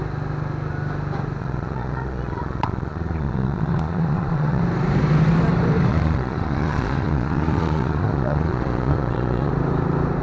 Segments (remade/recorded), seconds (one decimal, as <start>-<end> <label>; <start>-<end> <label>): 0.0-1.4 recorded; 1.4-4.6 remade; 4.6-5.9 recorded; 5.9-9.5 remade; 9.5-10.2 recorded